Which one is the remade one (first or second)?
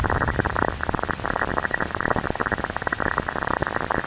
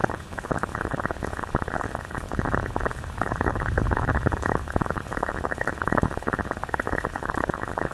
second